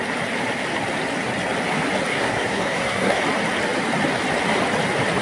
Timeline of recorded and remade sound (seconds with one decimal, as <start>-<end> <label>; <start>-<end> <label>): 0.0-2.1 recorded; 2.1-3.2 remade; 3.2-5.2 recorded